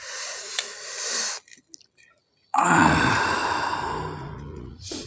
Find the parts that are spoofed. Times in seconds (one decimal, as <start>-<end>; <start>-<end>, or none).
0.0-0.7; 2.1-3.4; 4.2-5.1